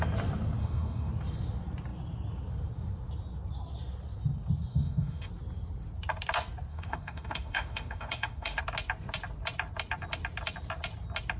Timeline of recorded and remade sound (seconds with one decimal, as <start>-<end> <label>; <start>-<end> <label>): 0.0-0.6 recorded; 0.6-1.1 remade; 1.1-4.7 recorded; 4.7-5.3 remade; 5.3-6.7 recorded; 6.7-8.6 remade; 8.6-11.4 recorded